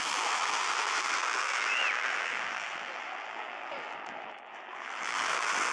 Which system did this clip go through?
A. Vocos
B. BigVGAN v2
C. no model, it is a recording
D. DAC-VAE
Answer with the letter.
B